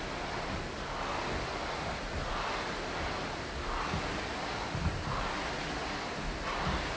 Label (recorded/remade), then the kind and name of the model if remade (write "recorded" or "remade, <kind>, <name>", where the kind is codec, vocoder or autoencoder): recorded